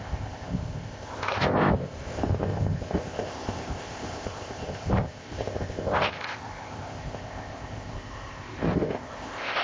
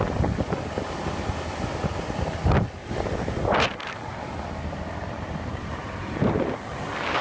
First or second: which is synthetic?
first